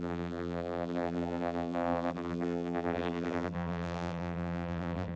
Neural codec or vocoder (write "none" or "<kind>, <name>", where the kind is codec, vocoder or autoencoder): vocoder, BigVGAN v2